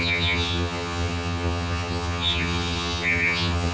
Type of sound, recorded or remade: remade